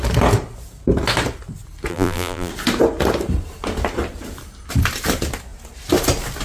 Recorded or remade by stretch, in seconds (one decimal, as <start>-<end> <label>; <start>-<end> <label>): 0.0-1.9 recorded; 1.9-2.5 remade; 2.5-6.4 recorded